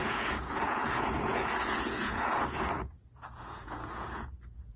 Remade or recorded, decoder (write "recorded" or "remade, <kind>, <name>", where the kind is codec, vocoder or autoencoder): remade, vocoder, Vocos